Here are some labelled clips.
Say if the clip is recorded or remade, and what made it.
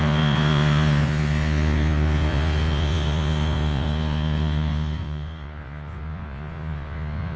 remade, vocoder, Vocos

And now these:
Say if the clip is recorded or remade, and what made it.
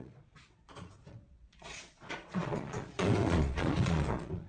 remade, vocoder, Vocos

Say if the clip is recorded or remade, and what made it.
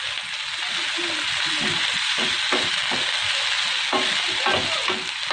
recorded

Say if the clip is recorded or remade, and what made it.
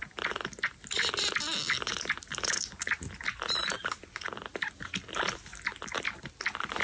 recorded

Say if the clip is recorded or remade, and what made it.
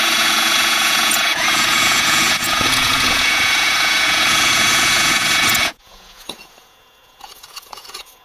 remade, vocoder, Vocos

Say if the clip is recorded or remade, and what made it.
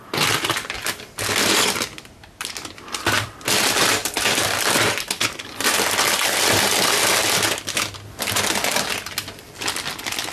recorded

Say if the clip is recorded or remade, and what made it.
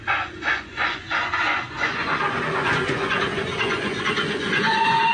remade, vocoder, Vocos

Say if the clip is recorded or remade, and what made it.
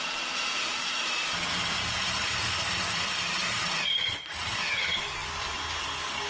recorded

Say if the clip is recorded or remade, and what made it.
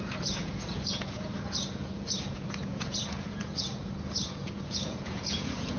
remade, vocoder, Vocos